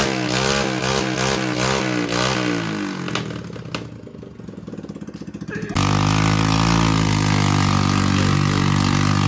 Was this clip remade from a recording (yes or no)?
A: no